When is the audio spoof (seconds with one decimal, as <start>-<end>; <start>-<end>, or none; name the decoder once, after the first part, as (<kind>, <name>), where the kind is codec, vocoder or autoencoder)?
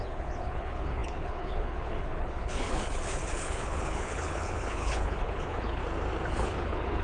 0.0-5.8 (codec, HILCodec); 6.3-7.0